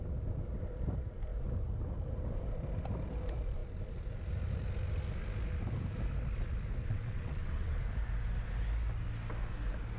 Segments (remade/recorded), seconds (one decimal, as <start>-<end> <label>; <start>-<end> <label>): 0.0-6.8 recorded; 6.8-7.8 remade; 7.8-10.0 recorded